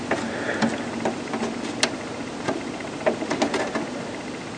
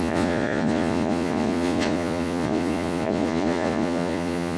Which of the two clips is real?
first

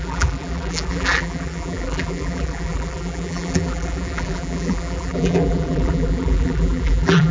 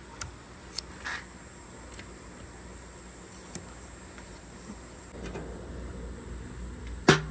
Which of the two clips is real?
second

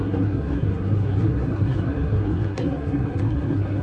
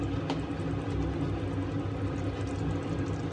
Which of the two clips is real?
second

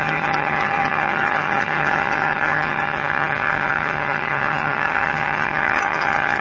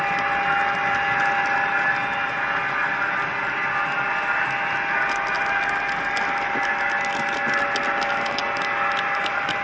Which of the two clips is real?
second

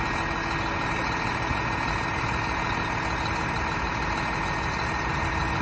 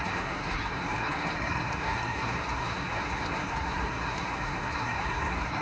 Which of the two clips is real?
first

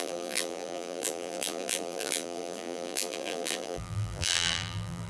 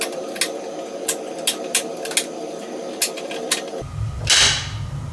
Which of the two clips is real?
second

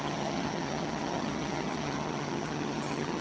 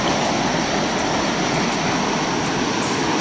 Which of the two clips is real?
second